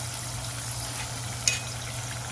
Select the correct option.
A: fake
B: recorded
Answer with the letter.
B